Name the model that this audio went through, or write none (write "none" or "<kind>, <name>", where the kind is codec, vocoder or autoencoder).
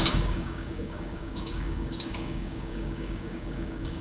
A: codec, DAC